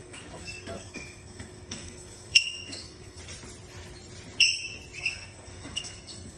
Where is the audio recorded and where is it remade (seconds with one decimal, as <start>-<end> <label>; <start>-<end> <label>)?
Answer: 0.0-3.2 remade; 3.2-5.0 recorded; 5.0-6.4 remade